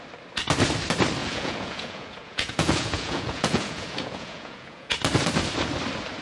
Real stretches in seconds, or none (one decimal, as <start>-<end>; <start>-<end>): 0.0-1.2; 4.9-6.2